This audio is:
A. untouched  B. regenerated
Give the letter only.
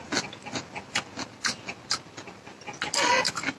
A